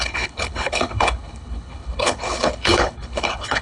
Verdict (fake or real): fake